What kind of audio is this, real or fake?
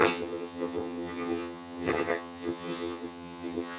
fake